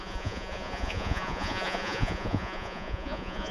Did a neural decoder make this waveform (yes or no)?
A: yes